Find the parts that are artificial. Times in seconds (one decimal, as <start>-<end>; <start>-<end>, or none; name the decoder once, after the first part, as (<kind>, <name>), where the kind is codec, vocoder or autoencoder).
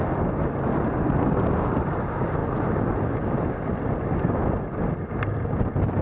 none